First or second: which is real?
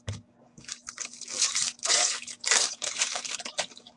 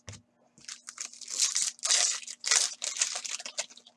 second